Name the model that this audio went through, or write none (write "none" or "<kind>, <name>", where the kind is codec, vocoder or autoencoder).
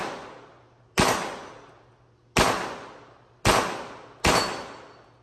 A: none